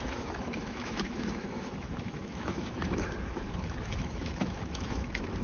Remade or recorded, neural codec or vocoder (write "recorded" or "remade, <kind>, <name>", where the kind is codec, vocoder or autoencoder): remade, autoencoder, DAC-VAE